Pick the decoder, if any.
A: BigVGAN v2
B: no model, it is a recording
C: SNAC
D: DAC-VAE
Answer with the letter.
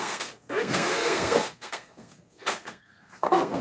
C